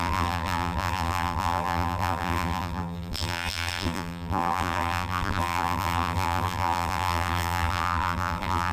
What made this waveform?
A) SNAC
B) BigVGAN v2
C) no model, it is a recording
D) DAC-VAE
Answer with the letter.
B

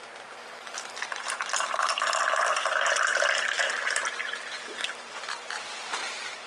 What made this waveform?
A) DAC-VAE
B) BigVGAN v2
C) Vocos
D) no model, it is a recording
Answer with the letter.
B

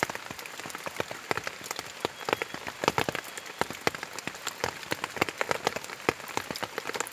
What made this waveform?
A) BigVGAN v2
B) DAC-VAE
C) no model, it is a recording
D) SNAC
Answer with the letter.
C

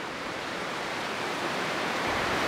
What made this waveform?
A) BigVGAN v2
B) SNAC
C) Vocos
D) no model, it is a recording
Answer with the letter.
A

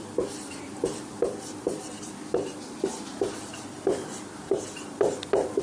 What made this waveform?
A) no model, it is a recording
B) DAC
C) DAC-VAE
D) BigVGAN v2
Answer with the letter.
D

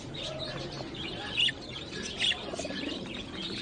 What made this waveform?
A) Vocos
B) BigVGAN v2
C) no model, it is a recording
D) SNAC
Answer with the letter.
B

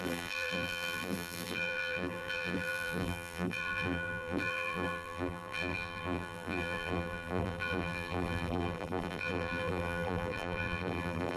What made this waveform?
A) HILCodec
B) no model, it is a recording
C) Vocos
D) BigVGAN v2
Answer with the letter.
D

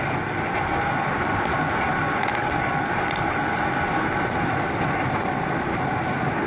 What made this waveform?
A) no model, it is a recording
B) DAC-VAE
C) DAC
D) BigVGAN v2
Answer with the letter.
A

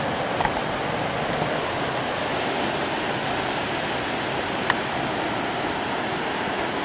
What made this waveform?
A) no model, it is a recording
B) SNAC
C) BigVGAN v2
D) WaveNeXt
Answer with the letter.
A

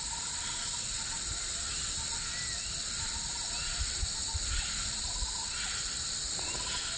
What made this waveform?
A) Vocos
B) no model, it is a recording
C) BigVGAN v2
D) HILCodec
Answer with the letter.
B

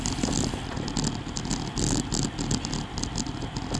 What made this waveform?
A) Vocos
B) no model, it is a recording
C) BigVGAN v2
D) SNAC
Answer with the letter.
B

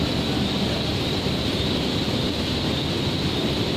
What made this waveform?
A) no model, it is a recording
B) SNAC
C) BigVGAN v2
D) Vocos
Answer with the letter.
A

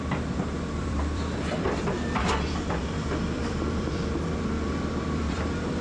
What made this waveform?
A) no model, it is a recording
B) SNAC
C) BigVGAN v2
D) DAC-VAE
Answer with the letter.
C